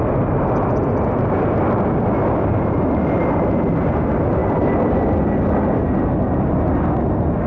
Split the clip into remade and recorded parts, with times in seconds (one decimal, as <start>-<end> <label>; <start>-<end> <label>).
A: 0.0-7.5 recorded